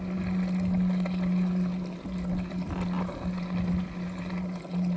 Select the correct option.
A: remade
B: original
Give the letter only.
B